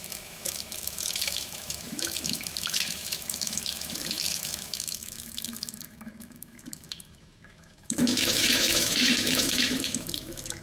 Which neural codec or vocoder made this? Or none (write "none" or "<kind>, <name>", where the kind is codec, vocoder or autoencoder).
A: autoencoder, DAC-VAE